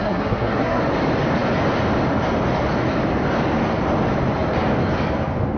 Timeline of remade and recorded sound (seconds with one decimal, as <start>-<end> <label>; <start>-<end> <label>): 0.0-0.8 remade; 0.8-5.6 recorded